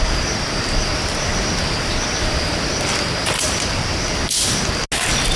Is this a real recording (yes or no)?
yes